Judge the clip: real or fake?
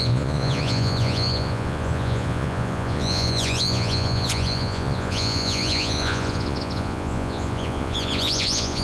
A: fake